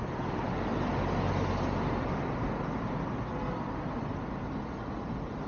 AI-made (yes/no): no